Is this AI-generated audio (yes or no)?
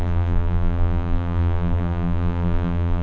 yes